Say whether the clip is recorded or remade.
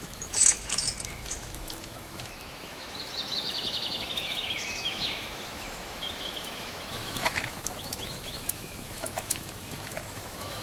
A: remade